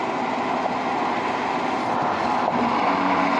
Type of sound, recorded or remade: recorded